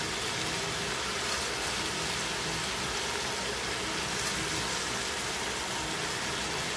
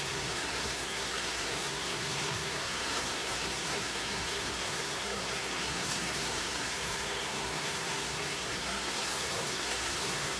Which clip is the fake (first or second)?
second